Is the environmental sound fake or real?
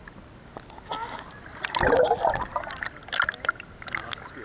real